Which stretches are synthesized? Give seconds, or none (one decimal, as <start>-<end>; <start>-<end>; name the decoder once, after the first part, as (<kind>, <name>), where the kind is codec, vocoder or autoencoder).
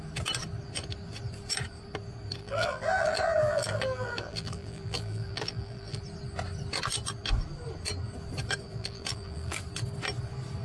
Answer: 2.4-6.0 (vocoder, BigVGAN v2); 8.7-9.6